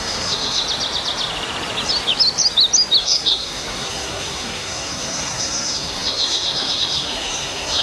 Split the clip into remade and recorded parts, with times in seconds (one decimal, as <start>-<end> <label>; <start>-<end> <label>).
0.0-0.6 remade; 0.6-3.0 recorded; 3.0-7.8 remade